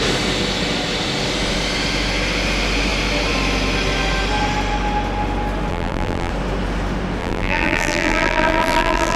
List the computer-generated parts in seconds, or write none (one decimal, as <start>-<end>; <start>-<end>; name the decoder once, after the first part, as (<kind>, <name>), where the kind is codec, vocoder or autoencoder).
5.7-6.3 (vocoder, BigVGAN v2); 7.2-9.2